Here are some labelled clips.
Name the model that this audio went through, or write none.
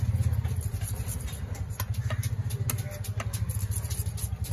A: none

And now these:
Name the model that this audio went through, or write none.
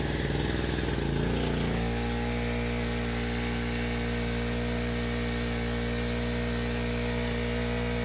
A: none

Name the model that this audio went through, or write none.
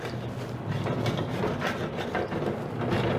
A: none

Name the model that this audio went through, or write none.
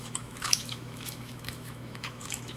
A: autoencoder, DAC-VAE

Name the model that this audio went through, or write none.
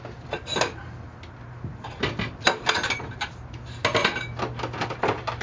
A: none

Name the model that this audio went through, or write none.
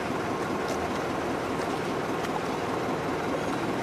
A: none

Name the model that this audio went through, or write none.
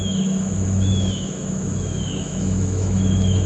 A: autoencoder, DAC-VAE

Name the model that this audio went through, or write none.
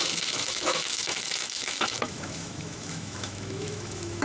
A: autoencoder, DAC-VAE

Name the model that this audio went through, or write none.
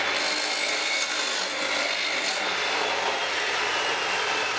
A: none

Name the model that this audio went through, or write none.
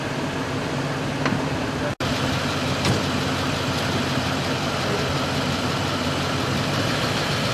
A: none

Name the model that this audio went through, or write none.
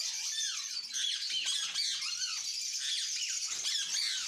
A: none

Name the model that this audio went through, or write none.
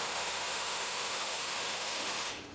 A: autoencoder, DAC-VAE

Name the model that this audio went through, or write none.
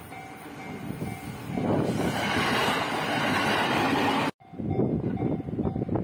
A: none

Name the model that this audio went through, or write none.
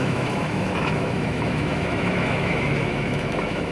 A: autoencoder, DAC-VAE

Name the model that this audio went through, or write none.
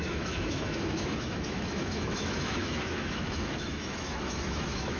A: autoencoder, DAC-VAE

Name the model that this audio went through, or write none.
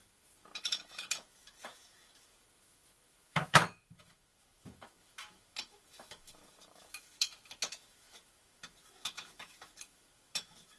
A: autoencoder, DAC-VAE